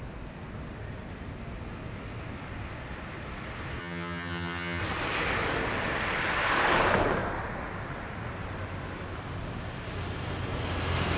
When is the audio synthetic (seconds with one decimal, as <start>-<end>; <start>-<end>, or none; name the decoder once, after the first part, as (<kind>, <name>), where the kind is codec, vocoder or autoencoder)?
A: 3.8-4.8 (vocoder, HiFi-GAN)